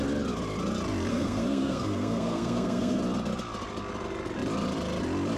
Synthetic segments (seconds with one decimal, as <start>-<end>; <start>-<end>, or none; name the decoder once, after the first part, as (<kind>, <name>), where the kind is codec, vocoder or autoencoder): 1.1-3.0 (codec, SNAC)